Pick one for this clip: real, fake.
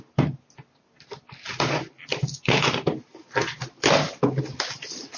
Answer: real